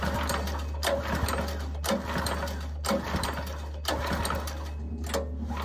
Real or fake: real